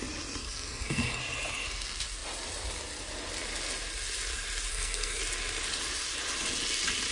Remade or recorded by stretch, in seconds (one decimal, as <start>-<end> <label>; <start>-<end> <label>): 0.0-0.4 recorded; 0.4-1.2 remade; 1.2-4.7 recorded; 4.7-5.2 remade; 5.2-7.1 recorded